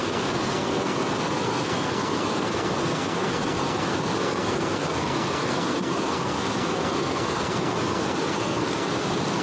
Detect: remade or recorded remade